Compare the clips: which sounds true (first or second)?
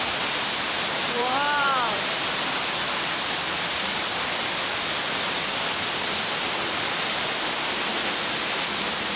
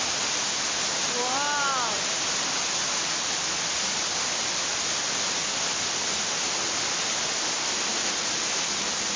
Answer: second